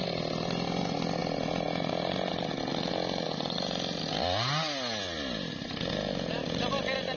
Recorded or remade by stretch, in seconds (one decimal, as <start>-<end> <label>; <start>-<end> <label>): 0.0-7.2 recorded